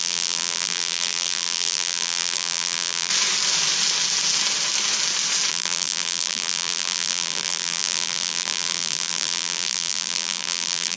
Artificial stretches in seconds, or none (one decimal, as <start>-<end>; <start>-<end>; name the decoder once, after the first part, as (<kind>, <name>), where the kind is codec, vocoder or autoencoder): 0.0-3.1 (vocoder, BigVGAN v2); 5.5-11.0